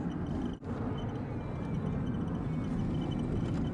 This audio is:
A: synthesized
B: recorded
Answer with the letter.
B